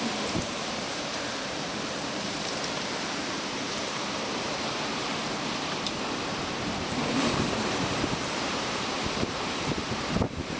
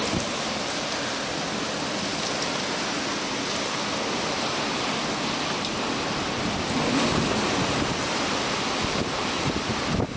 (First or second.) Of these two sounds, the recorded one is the second